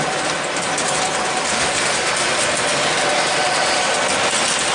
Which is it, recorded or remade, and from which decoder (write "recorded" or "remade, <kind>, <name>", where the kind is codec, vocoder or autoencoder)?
recorded